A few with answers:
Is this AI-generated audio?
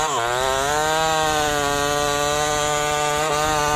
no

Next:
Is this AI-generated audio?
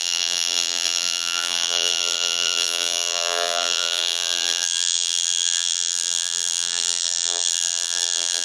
yes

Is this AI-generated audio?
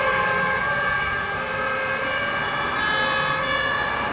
no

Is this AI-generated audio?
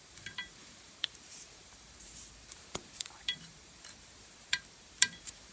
yes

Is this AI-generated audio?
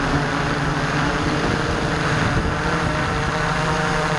yes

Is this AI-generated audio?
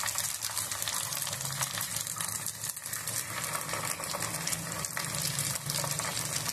no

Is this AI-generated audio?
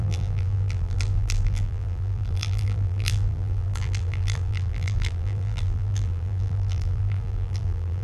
yes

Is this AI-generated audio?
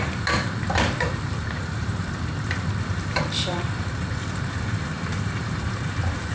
yes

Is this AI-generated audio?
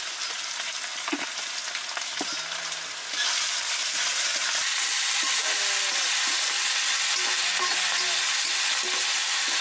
no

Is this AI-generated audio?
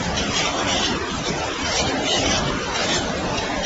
no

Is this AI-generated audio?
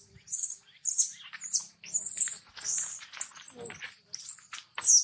no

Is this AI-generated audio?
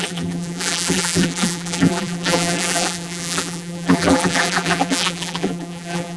yes